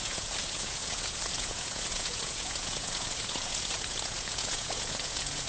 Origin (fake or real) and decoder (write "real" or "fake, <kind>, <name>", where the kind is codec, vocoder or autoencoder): fake, vocoder, Vocos